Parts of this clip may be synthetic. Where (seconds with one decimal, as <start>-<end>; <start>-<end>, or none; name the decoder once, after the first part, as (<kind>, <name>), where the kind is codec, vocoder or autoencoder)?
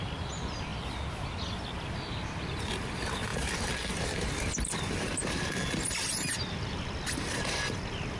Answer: none